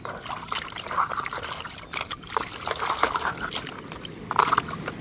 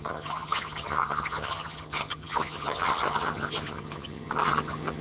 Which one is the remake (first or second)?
second